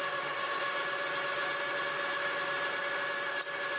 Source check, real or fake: real